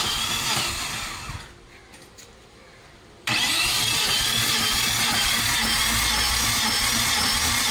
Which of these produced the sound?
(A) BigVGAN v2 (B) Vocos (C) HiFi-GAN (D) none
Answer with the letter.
D